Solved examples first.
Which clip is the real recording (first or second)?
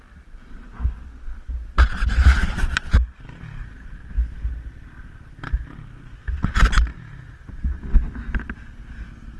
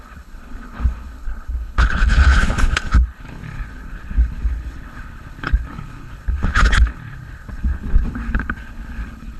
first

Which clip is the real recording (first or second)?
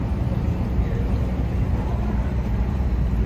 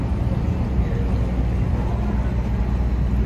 second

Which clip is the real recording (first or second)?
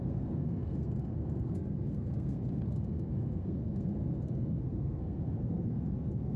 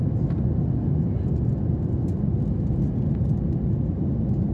second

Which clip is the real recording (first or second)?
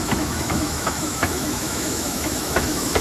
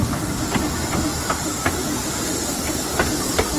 second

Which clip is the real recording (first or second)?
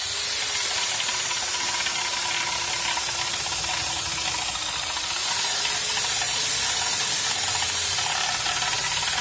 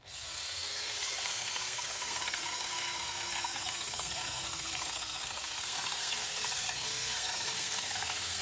first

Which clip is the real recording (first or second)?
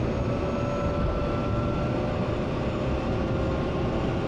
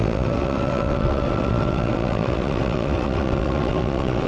first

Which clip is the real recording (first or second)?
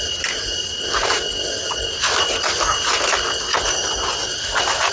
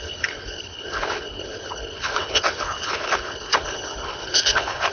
first